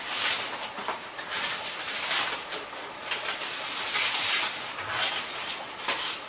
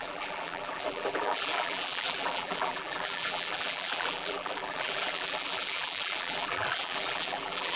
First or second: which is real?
first